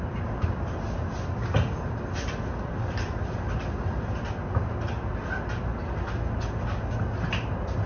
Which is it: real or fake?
real